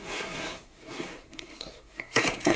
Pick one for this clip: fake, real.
fake